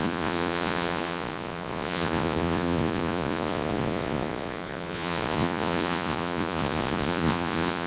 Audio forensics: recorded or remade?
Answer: remade